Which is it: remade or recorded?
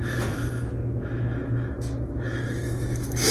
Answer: remade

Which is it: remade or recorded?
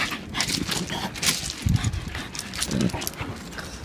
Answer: recorded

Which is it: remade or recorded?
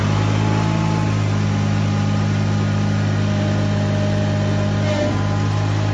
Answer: recorded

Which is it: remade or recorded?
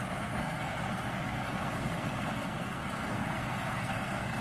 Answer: remade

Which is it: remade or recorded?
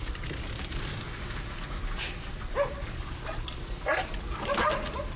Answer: remade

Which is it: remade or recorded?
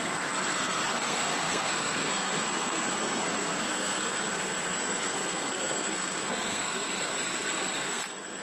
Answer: remade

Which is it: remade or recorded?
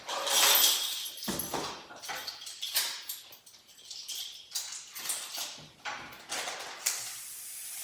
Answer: recorded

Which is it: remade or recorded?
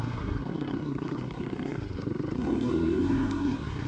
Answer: remade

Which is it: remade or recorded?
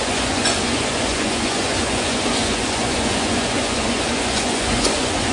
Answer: remade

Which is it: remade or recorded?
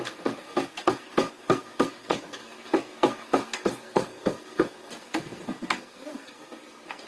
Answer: remade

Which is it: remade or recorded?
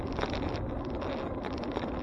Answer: recorded